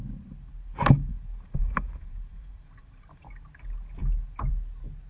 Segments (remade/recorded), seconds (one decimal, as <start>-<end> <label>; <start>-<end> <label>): 0.0-1.1 recorded; 1.1-3.3 remade; 3.3-5.1 recorded